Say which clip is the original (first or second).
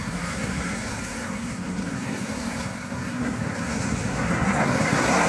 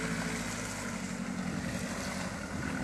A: second